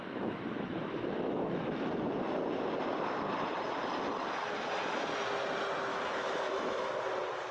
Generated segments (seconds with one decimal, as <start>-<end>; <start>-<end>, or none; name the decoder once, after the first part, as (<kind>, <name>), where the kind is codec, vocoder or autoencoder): 0.0-2.0 (autoencoder, DAC-VAE); 5.9-6.9